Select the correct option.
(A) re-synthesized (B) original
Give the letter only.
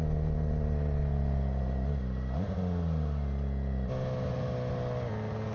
B